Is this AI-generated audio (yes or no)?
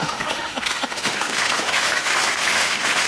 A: yes